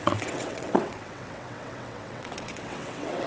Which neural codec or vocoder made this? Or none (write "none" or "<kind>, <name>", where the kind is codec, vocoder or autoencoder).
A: vocoder, WaveNeXt